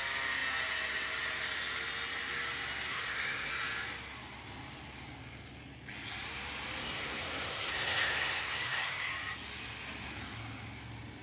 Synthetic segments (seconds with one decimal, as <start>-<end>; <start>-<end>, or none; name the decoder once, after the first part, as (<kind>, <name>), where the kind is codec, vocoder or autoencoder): 2.9-3.5 (codec, SNAC); 6.8-9.1

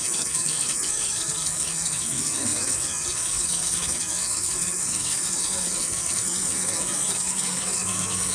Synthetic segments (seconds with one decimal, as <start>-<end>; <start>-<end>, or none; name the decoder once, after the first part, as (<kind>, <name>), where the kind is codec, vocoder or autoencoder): 0.0-8.3 (codec, SNAC)

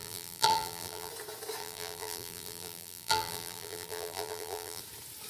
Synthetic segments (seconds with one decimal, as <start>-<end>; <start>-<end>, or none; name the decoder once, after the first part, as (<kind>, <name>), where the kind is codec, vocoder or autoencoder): 0.0-1.1 (vocoder, BigVGAN v2); 1.6-4.8

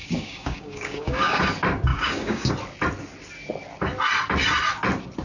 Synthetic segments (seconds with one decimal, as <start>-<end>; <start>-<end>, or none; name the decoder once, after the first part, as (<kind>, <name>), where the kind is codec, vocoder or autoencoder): 0.0-1.4 (codec, DAC); 1.9-2.5

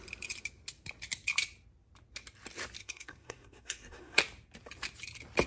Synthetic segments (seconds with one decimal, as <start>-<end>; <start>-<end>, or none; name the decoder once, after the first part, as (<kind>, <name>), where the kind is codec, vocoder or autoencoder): 2.8-4.2 (codec, SNAC)

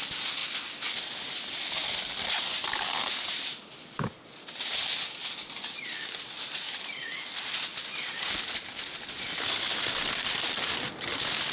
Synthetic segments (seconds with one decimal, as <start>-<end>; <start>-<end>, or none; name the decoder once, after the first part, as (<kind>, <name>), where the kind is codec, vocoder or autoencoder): none

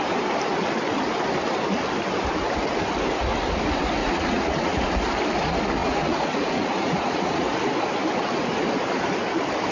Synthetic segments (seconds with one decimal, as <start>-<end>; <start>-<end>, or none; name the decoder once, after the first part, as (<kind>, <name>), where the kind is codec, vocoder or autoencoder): 4.0-4.9 (vocoder, Vocos); 5.8-7.5

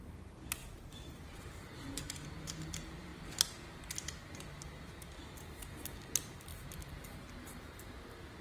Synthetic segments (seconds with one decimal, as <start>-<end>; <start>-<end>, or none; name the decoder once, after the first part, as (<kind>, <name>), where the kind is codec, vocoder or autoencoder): 0.6-2.0 (vocoder, BigVGAN v2)